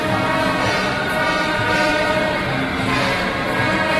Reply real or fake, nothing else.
real